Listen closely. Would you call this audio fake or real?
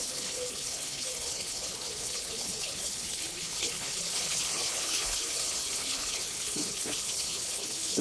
fake